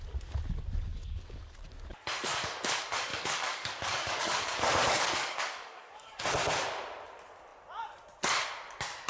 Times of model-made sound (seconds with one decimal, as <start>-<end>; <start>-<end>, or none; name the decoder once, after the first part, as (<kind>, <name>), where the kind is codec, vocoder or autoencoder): 0.9-1.6 (codec, DAC); 3.1-6.2